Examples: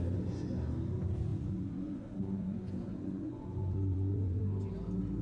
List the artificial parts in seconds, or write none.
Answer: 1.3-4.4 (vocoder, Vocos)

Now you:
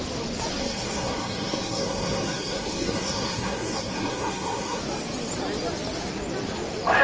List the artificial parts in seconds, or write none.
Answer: 0.6-4.8 (codec, SNAC)

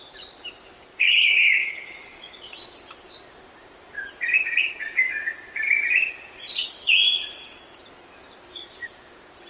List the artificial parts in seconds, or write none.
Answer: 0.9-2.7 (vocoder, Vocos)

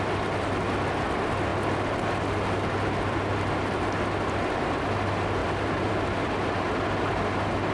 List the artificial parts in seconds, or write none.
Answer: 5.4-5.9 (vocoder, BigVGAN v2)

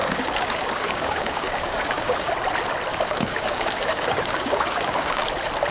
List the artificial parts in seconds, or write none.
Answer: 0.0-2.3 (codec, DAC); 2.9-5.3

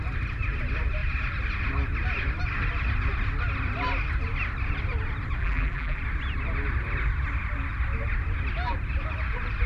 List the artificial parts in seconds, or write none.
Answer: 5.4-6.0 (vocoder, BigVGAN v2)